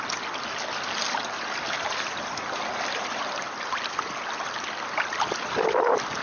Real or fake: real